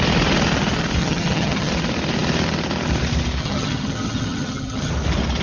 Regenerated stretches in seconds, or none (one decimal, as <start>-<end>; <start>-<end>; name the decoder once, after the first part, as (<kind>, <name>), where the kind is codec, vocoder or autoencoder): 1.0-1.7 (vocoder, HiFi-GAN); 3.4-4.9